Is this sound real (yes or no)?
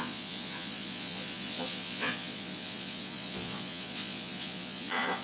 no